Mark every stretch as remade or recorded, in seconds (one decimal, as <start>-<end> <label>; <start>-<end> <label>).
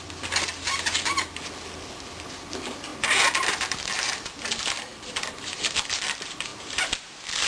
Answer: 0.0-2.9 remade; 2.9-3.5 recorded; 3.5-6.5 remade; 6.5-7.5 recorded